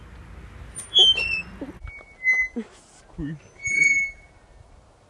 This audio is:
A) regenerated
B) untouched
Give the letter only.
B